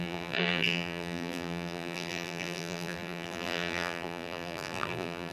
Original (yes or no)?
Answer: no